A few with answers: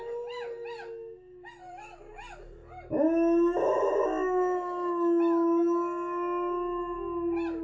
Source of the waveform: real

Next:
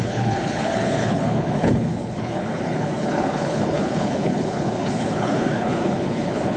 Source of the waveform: fake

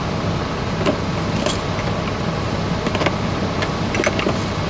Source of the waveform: real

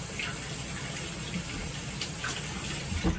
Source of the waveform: real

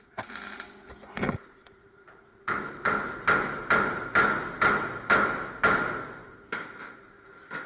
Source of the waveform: real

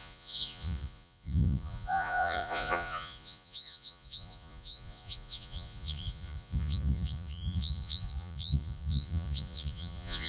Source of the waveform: fake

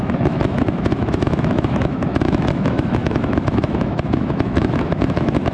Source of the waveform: fake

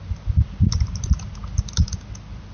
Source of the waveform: real